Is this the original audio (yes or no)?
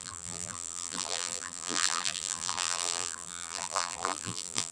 no